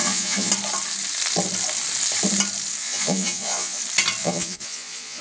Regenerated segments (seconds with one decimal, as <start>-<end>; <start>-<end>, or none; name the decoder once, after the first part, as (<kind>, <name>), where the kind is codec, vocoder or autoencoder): 0.0-0.5 (vocoder, Vocos); 2.8-3.8; 4.2-5.2